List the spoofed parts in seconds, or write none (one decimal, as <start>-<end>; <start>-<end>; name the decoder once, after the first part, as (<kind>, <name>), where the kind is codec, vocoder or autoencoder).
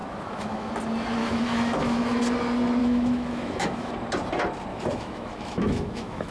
0.0-0.7 (autoencoder, DAC-VAE); 1.2-2.2; 2.8-3.9; 4.7-6.3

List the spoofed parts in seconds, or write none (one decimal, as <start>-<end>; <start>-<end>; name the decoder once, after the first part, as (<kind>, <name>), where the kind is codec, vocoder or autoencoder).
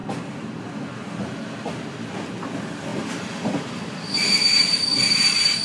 none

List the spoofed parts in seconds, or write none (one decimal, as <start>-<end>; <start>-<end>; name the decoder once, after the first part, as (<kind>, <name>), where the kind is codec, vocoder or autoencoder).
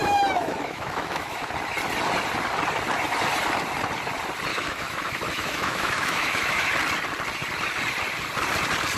0.0-1.5 (autoencoder, DAC-VAE); 4.5-6.7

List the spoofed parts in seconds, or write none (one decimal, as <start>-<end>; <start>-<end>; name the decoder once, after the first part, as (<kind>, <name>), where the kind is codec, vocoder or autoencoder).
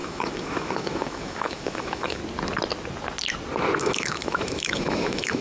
0.0-2.2 (autoencoder, DAC-VAE); 3.8-5.4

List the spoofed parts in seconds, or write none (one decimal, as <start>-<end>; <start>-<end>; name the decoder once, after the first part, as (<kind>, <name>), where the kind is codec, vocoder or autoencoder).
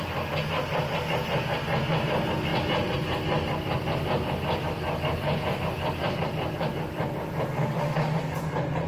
7.6-8.2 (autoencoder, DAC-VAE)